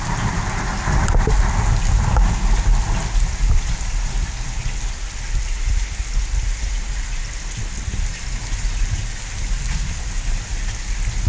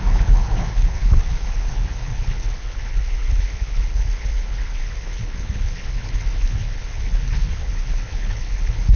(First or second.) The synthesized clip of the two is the second